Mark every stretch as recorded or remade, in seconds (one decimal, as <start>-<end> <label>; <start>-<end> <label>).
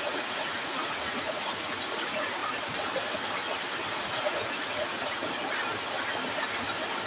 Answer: 0.0-2.4 remade; 2.4-3.9 recorded; 3.9-5.2 remade; 5.2-7.1 recorded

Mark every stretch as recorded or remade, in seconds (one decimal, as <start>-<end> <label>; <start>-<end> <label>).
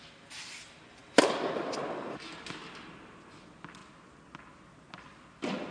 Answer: 0.0-5.7 recorded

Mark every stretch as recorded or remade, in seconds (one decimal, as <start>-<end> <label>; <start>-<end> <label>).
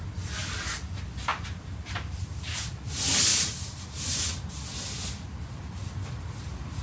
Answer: 0.0-1.3 recorded; 1.3-2.7 remade; 2.7-3.3 recorded; 3.3-4.2 remade; 4.2-5.8 recorded; 5.8-6.8 remade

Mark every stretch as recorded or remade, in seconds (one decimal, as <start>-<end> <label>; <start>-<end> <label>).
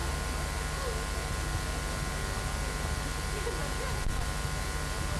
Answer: 0.0-5.2 recorded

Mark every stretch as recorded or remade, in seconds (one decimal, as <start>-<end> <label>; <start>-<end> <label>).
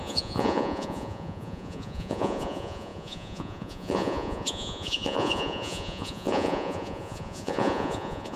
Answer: 0.0-8.4 remade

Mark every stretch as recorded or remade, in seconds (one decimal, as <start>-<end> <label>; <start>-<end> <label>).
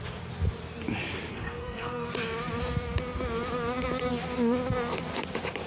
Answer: 0.0-1.3 recorded; 1.3-2.1 remade; 2.1-5.7 recorded